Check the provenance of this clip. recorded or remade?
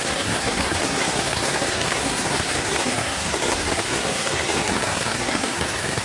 remade